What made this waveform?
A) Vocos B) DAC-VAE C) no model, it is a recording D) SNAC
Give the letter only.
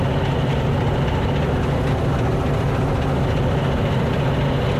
C